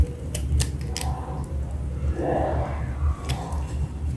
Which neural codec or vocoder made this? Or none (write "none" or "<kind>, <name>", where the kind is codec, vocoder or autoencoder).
none